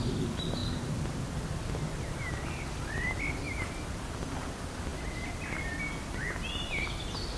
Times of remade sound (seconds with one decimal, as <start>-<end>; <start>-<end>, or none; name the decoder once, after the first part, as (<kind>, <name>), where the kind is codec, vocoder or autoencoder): none